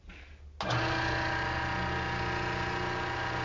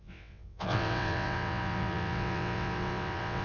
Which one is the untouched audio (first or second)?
first